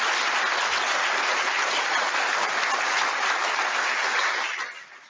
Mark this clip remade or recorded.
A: recorded